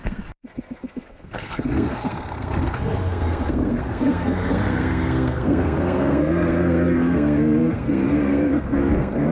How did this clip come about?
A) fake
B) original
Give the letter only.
A